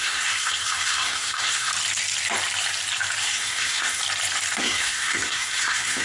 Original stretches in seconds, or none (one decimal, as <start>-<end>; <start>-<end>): 1.7-3.2; 4.0-4.6